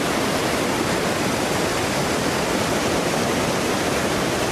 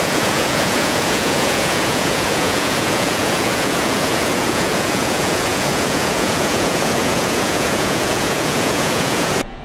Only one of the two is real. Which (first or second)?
first